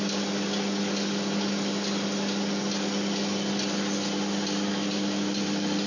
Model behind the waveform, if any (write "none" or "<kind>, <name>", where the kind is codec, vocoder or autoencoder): none